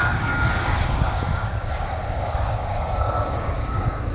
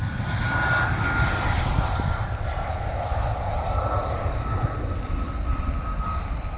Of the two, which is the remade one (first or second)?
first